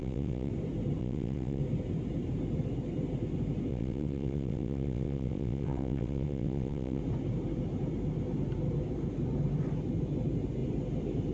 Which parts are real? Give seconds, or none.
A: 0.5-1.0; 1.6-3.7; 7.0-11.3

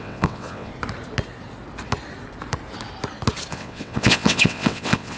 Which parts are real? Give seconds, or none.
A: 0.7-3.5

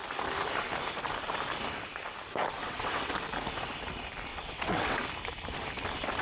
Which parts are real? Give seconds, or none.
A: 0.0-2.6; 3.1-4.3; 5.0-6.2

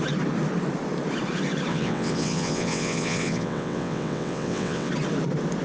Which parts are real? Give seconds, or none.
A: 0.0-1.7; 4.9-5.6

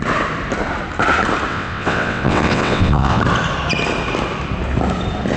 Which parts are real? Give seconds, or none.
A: 0.0-1.5; 3.2-5.4

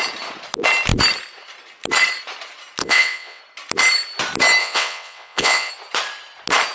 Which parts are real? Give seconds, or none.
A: 0.0-2.8; 3.4-4.6; 5.7-6.7